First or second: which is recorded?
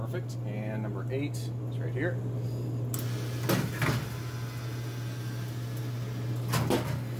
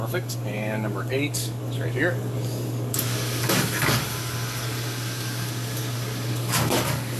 first